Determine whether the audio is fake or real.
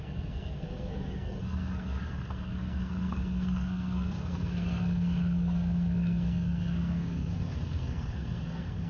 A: fake